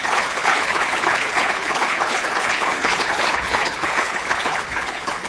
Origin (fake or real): fake